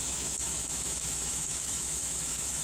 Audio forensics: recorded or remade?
remade